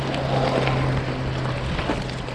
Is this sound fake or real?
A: real